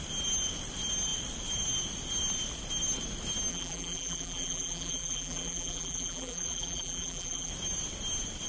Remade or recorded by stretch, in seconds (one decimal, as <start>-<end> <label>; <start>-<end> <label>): 0.0-3.5 recorded; 3.5-7.5 remade; 7.5-8.5 recorded